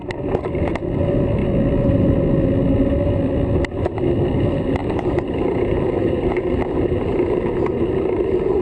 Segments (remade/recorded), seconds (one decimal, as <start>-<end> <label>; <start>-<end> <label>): 0.0-0.5 remade; 0.5-4.8 recorded; 4.8-8.6 remade